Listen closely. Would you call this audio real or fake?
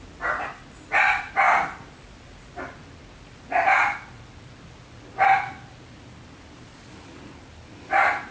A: real